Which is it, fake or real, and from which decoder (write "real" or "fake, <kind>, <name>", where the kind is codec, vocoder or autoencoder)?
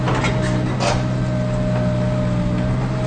real